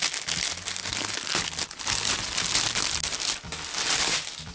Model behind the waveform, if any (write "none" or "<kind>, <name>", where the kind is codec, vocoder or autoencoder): none